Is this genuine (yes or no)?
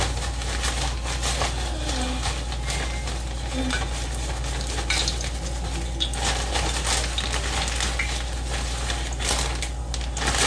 yes